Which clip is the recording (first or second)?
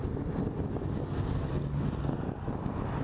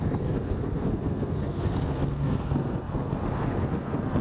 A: first